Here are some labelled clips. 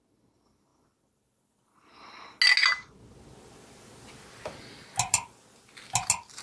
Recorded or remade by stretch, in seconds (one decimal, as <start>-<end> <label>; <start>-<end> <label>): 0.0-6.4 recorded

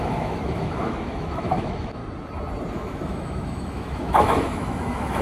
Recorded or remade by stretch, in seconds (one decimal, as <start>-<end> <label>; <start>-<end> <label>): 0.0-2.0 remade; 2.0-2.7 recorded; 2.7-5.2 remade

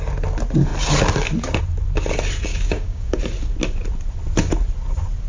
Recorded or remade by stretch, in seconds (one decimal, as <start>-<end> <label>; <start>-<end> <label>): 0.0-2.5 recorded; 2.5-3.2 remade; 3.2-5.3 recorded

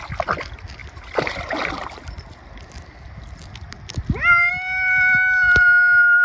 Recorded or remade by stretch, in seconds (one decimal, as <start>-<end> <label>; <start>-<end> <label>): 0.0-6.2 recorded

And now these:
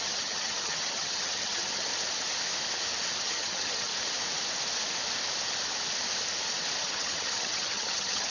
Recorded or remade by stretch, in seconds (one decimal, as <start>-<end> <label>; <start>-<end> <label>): 0.0-1.9 remade; 1.9-3.2 recorded; 3.2-3.9 remade; 3.9-6.8 recorded; 6.8-8.3 remade